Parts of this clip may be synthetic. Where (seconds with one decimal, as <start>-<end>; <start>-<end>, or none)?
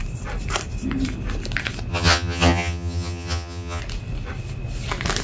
1.9-3.8